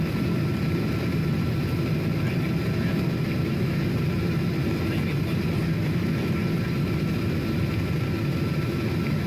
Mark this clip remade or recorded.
recorded